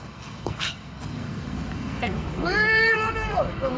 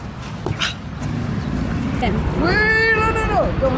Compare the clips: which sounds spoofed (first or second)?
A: first